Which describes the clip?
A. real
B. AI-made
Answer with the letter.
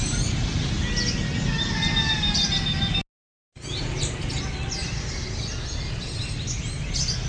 A